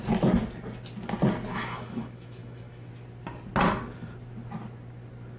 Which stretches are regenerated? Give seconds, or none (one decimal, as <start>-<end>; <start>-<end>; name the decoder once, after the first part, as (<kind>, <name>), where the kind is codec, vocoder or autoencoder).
1.5-2.9 (autoencoder, DAC-VAE)